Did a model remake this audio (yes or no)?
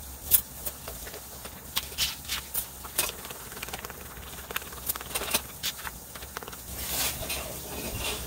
no